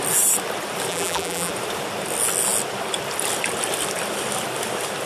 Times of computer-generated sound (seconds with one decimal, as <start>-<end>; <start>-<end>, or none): 0.9-1.5